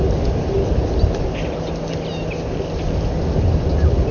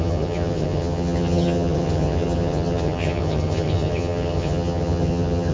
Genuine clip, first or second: first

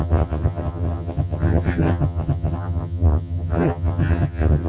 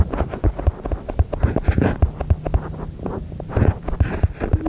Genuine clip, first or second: second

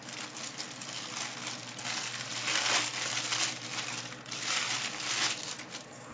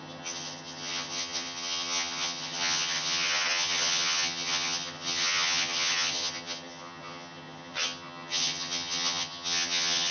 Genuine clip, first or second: first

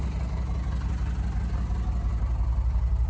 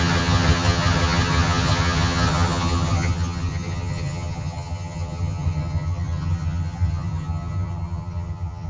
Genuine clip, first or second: first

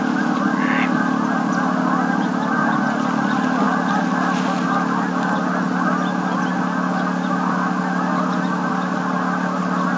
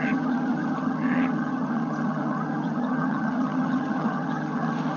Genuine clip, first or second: first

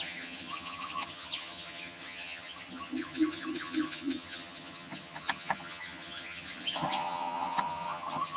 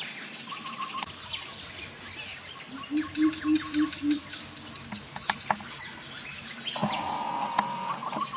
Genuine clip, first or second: second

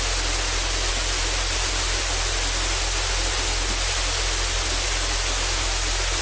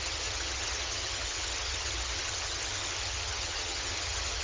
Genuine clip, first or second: first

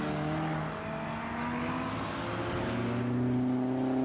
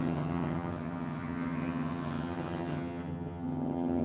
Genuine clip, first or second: first